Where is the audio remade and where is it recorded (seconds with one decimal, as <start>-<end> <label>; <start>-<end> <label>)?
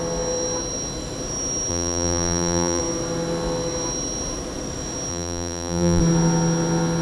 0.0-1.7 recorded; 1.7-2.8 remade; 2.8-5.1 recorded; 5.1-6.0 remade; 6.0-7.0 recorded